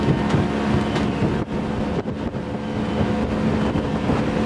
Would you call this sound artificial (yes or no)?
no